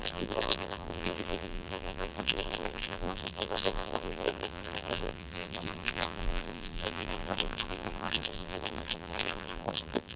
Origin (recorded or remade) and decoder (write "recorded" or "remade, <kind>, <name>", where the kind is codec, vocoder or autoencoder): remade, vocoder, BigVGAN v2